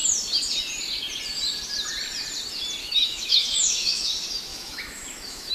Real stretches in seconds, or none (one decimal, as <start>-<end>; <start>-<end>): 0.0-2.8; 4.1-4.5